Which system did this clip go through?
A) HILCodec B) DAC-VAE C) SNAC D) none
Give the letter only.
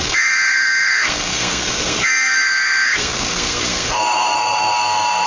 C